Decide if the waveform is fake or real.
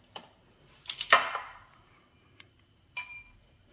fake